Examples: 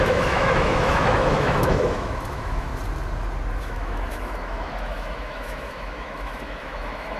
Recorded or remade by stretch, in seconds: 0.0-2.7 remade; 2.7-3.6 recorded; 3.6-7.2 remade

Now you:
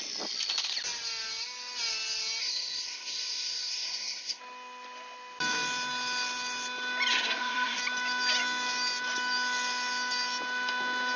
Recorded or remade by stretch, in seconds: 0.0-2.4 recorded; 2.4-4.4 remade; 4.4-7.1 recorded; 7.1-7.8 remade; 7.8-11.2 recorded

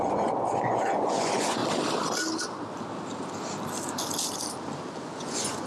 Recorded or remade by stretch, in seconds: 0.0-1.6 remade; 1.6-5.0 recorded; 5.0-5.7 remade

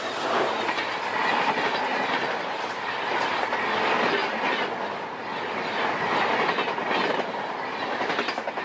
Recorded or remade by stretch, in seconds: 0.0-1.2 recorded; 1.2-3.3 remade; 3.3-8.6 recorded

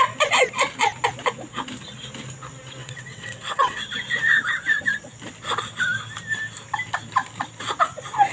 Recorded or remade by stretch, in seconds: 0.0-2.8 recorded; 2.8-3.8 remade; 3.8-8.3 recorded

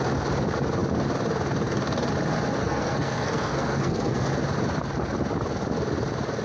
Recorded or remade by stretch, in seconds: 0.0-2.6 recorded; 2.6-4.3 remade; 4.3-6.4 recorded

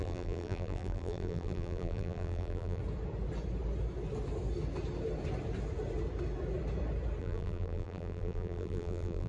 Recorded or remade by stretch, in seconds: 0.0-2.8 remade; 2.8-7.2 recorded; 7.2-9.3 remade